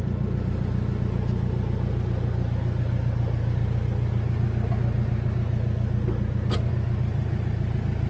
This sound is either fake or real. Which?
real